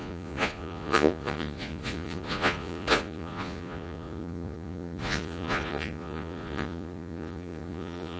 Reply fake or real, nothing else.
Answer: fake